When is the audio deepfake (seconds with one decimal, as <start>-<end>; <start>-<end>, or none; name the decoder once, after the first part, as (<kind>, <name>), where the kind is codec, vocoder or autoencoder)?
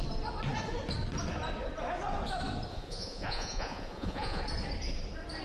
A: 2.7-4.4 (vocoder, Vocos)